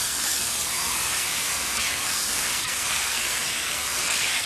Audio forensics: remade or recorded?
remade